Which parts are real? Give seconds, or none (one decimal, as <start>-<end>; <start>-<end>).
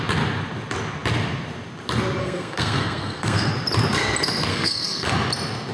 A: 0.0-2.2; 3.5-4.5; 5.1-5.7